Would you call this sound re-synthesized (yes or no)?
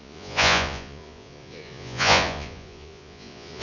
yes